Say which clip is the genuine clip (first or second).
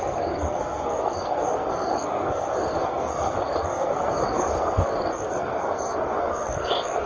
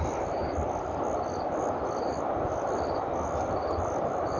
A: second